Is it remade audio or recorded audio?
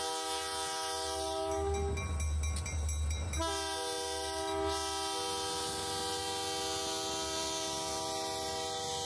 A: recorded